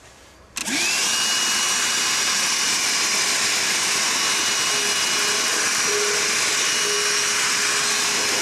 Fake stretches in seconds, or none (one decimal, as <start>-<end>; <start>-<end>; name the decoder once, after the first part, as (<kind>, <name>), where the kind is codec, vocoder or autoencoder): none